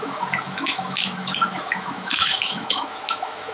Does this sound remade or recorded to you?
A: remade